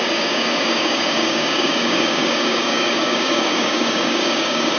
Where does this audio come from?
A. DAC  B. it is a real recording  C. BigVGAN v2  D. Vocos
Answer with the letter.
A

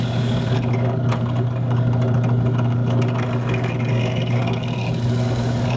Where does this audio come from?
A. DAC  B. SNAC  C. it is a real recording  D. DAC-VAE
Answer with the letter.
A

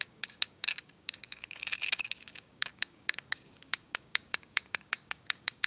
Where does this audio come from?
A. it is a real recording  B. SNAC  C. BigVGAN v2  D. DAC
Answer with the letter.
D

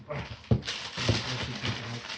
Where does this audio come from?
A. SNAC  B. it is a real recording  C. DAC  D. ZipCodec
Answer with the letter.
B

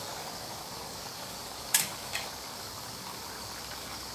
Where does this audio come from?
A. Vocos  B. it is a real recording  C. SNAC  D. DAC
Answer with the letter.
D